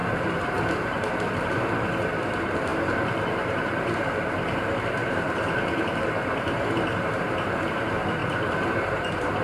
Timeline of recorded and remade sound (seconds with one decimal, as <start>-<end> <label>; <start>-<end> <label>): 0.0-9.4 remade